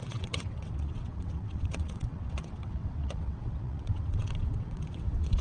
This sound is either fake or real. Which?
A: fake